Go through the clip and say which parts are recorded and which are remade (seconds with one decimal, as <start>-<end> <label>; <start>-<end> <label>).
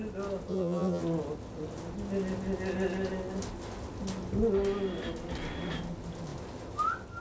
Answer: 0.0-0.5 recorded; 0.5-1.0 remade; 1.0-7.2 recorded